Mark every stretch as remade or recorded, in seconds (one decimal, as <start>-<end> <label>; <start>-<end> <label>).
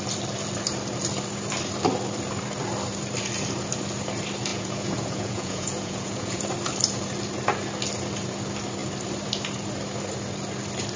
0.0-4.5 recorded; 4.5-6.4 remade; 6.4-11.0 recorded